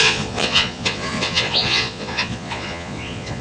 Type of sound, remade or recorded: remade